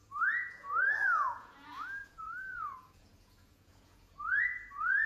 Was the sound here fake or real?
fake